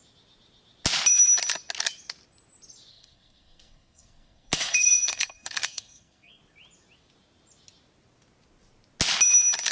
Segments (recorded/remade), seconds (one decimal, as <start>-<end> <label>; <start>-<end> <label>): 0.0-2.9 recorded; 2.9-6.4 remade; 6.4-9.7 recorded